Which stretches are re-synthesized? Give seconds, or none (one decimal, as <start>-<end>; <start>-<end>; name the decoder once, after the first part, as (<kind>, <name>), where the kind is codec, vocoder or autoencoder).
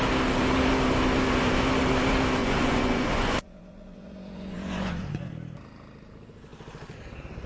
2.4-5.3 (vocoder, Vocos)